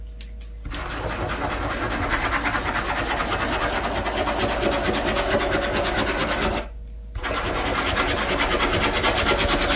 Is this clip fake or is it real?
real